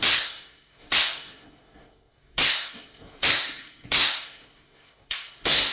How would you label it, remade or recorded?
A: remade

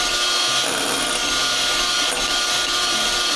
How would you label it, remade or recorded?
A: recorded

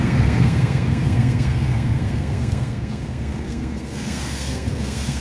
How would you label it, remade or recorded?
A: remade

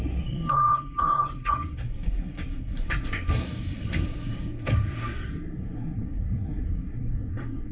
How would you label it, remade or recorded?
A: remade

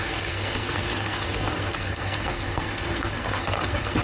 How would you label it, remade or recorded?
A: remade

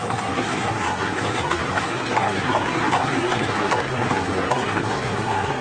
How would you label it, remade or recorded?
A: remade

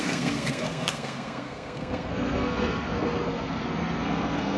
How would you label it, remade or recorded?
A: remade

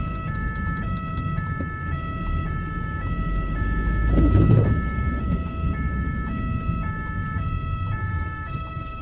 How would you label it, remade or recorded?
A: recorded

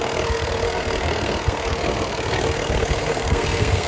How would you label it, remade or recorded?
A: remade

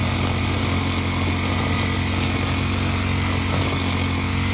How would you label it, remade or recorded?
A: recorded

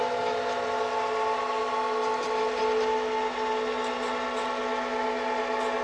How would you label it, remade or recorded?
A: recorded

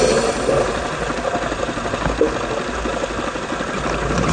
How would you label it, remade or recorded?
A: recorded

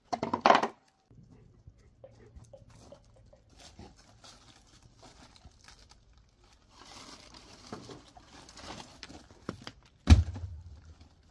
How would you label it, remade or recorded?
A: recorded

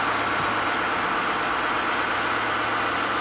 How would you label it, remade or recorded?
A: recorded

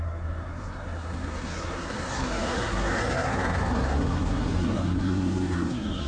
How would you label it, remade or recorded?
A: remade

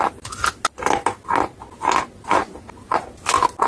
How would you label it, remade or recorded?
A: recorded